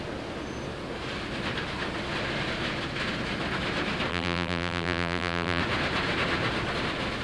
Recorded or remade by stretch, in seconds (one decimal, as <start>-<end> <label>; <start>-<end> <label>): 0.0-4.1 recorded; 4.1-5.6 remade; 5.6-7.2 recorded